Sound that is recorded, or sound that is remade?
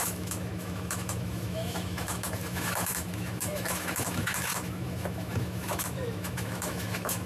remade